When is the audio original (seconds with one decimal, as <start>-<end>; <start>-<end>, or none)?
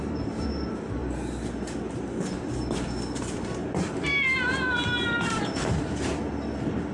1.0-3.2; 3.6-5.4